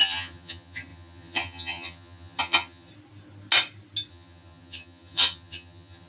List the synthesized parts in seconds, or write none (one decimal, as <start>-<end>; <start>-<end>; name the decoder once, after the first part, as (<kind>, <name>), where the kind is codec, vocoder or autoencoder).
0.0-2.9 (vocoder, HiFi-GAN); 4.1-6.1